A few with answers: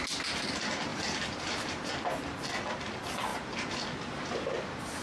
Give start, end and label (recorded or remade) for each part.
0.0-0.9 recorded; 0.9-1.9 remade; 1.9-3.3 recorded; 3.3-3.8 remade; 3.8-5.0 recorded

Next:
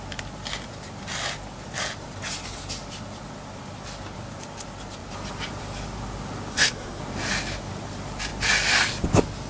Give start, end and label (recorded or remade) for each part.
0.0-6.5 recorded; 6.5-7.0 remade; 7.0-9.5 recorded

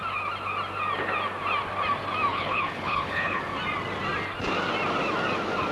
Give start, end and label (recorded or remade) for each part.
0.0-2.3 recorded; 2.3-3.4 remade; 3.4-5.7 recorded